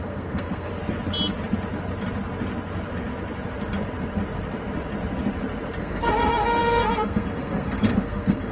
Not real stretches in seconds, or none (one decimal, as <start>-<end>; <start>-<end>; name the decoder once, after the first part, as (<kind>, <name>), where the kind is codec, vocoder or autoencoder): 0.0-0.7 (codec, SNAC); 5.8-8.5

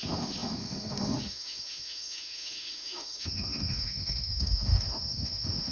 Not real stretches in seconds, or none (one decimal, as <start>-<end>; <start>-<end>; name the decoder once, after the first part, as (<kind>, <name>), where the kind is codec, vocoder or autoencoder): 0.0-5.7 (autoencoder, DAC-VAE)

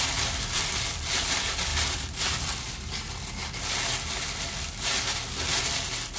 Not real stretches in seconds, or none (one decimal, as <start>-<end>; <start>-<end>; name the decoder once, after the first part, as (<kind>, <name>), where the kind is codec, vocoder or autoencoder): none

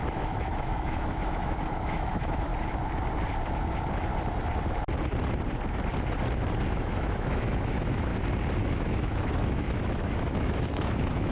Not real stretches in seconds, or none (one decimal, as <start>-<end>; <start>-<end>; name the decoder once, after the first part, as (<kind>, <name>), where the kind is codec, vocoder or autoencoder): 0.0-2.5 (autoencoder, DAC-VAE); 6.7-8.1; 8.6-11.3

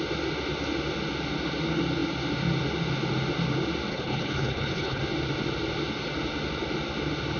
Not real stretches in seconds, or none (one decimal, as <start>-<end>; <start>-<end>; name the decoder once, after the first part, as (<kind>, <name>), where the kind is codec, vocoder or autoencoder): 3.9-5.0 (codec, HILCodec)

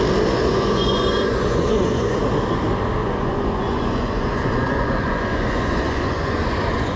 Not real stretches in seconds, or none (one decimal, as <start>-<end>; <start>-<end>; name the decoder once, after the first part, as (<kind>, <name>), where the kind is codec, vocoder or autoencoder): 0.4-2.2 (vocoder, Vocos); 3.0-7.0

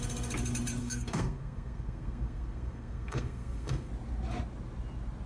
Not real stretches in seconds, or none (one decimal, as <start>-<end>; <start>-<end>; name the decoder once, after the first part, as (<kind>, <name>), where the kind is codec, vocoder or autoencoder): 0.8-3.9 (codec, SNAC)

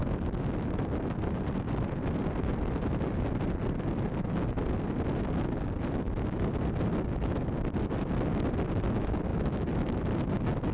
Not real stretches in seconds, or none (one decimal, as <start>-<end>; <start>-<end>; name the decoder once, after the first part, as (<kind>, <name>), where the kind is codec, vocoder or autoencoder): none